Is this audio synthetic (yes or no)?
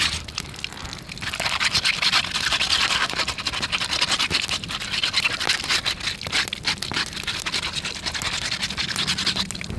no